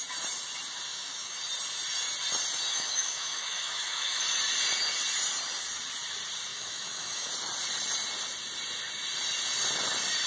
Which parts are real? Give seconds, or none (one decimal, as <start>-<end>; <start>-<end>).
0.0-0.9; 1.4-2.7; 4.2-6.5; 7.3-10.3